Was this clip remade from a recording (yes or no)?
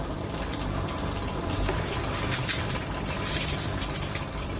yes